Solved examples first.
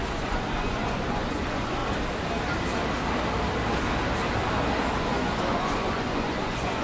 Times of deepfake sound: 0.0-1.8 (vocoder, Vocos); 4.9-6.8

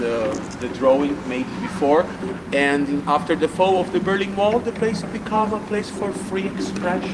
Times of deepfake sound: 5.1-5.8 (vocoder, Vocos)

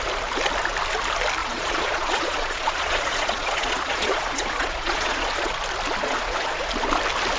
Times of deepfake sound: 1.4-5.5 (vocoder, Vocos); 6.0-6.7

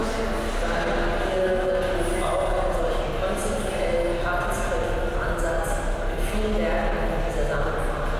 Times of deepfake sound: none

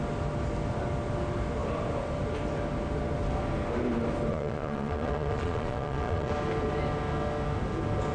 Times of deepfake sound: 4.3-6.3 (vocoder, Vocos)

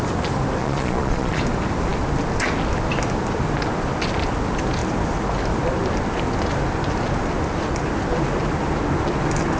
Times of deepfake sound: 0.6-1.4 (vocoder, Vocos)

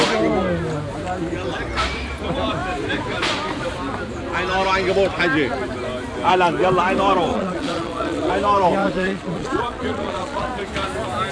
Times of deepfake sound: 7.3-8.3 (vocoder, Vocos); 8.8-10.5